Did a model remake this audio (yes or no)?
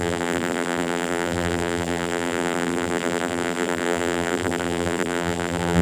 yes